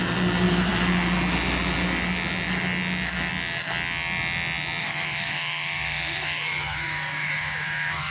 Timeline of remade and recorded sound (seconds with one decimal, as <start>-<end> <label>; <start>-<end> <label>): 0.0-4.8 recorded; 4.8-8.1 remade